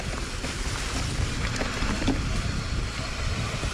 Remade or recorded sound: recorded